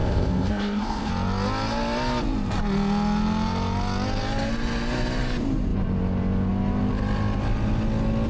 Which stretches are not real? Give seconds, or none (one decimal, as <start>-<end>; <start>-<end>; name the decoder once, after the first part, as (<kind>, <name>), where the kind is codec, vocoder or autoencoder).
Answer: 0.0-1.1 (codec, ZipCodec)